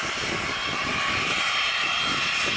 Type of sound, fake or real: real